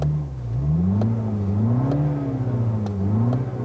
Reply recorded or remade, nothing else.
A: recorded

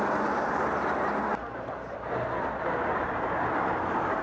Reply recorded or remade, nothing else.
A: recorded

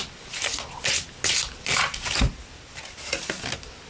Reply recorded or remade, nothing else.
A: recorded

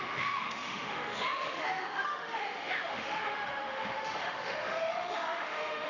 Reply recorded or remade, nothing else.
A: remade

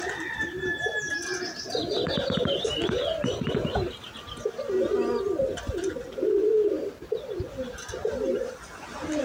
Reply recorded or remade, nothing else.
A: recorded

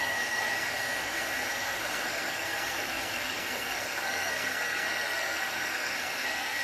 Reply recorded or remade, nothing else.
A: remade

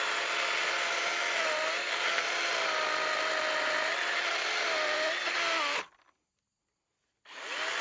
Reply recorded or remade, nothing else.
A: recorded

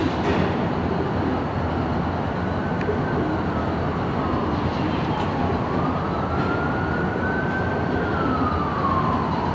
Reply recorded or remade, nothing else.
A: recorded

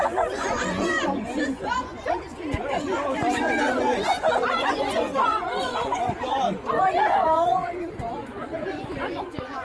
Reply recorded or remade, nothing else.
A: remade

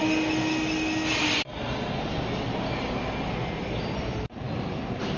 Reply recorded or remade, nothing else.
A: recorded